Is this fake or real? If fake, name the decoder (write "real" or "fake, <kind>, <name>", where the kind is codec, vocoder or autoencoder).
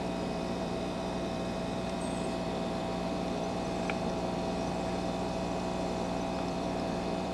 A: fake, vocoder, BigVGAN v2